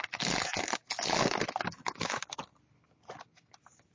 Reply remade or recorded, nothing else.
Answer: recorded